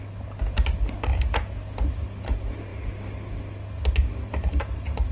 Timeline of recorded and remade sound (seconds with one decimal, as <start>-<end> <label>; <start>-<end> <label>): 0.0-2.7 remade; 2.7-4.3 recorded; 4.3-5.1 remade